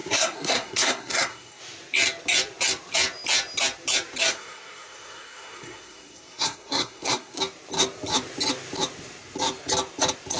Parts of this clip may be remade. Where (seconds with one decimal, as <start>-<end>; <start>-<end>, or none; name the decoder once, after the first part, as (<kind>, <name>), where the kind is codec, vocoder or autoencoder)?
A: 0.0-1.6 (codec, SNAC); 4.3-7.4